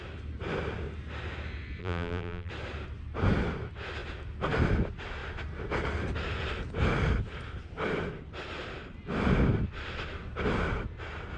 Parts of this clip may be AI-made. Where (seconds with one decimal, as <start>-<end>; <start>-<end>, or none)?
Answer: 1.8-2.5